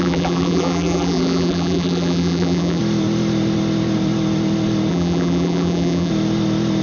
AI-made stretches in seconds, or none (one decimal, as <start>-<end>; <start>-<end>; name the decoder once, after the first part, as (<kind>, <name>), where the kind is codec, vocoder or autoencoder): 0.0-2.8 (vocoder, BigVGAN v2); 4.9-6.1